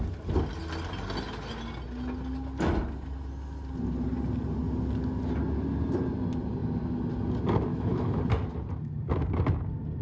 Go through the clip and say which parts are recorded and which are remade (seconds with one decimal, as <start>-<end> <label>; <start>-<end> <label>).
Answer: 0.0-7.7 recorded; 7.7-8.2 remade; 8.2-10.0 recorded